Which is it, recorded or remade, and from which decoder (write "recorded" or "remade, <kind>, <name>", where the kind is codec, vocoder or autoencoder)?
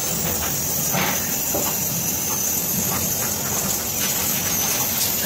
recorded